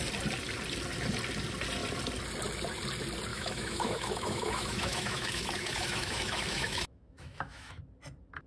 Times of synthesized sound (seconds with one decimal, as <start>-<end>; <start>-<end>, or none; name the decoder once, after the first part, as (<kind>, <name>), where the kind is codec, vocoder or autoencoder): 3.3-7.8 (autoencoder, DAC-VAE)